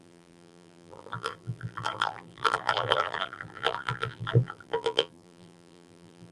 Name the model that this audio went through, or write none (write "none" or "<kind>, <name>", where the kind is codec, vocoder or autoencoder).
vocoder, BigVGAN v2